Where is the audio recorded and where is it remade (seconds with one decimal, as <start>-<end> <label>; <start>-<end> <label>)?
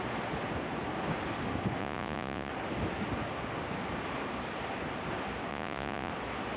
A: 0.0-1.8 recorded; 1.8-2.5 remade; 2.5-5.5 recorded; 5.5-6.1 remade; 6.1-6.6 recorded